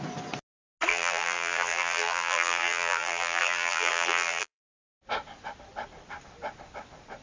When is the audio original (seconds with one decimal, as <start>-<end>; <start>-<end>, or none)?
0.0-0.9; 4.7-7.2